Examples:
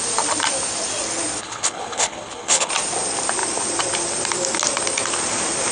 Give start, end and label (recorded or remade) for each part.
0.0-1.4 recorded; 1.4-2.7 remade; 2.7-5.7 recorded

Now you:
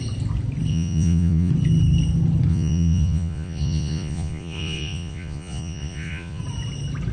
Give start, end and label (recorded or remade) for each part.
0.0-0.7 recorded; 0.7-1.5 remade; 1.5-2.5 recorded; 2.5-6.4 remade; 6.4-7.1 recorded

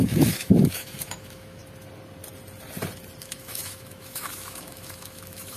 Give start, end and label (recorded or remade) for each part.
0.0-1.6 remade; 1.6-3.2 recorded; 3.2-5.6 remade

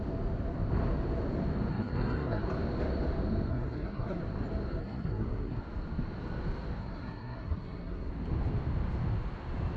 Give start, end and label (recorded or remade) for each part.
0.0-1.7 recorded; 1.7-2.4 remade; 2.4-3.5 recorded; 3.5-4.2 remade; 4.2-4.8 recorded; 4.8-5.6 remade; 5.6-6.8 recorded; 6.8-8.1 remade; 8.1-9.8 recorded

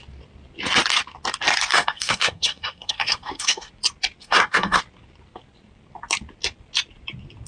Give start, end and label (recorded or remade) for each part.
0.0-1.7 recorded; 1.7-3.7 remade; 3.7-4.2 recorded; 4.2-4.8 remade; 4.8-7.5 recorded

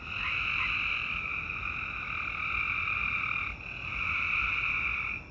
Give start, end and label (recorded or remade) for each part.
0.0-5.3 recorded